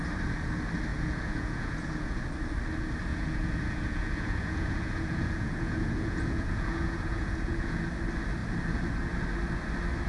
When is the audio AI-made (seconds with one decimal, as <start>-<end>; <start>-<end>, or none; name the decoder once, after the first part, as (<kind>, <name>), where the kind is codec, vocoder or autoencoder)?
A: 0.9-2.2 (vocoder, Vocos); 3.1-7.8